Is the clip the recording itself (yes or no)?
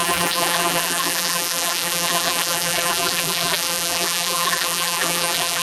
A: no